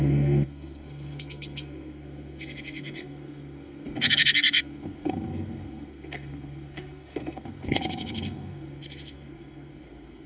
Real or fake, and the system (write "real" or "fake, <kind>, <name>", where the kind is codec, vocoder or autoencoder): fake, codec, SNAC